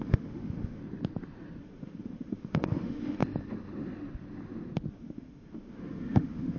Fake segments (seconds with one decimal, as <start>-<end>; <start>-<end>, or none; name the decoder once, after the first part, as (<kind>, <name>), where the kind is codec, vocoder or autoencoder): 0.0-0.8 (autoencoder, DAC-VAE); 1.6-3.2; 4.9-6.6